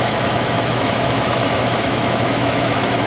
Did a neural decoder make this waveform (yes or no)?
yes